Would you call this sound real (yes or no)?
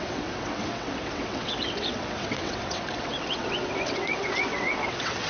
no